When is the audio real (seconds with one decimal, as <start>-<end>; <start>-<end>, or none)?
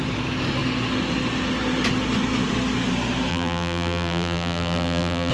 0.0-3.3